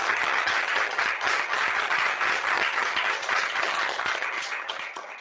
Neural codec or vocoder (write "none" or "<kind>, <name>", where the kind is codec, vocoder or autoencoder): vocoder, HiFi-GAN